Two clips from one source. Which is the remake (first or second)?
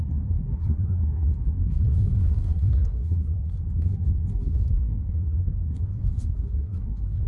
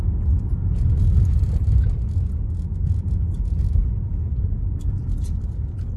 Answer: first